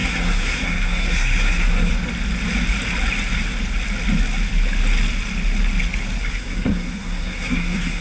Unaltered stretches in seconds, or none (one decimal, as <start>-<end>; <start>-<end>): 1.9-6.2